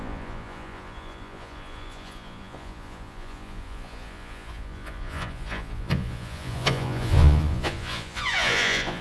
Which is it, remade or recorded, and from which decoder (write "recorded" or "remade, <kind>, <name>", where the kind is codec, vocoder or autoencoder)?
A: remade, vocoder, Vocos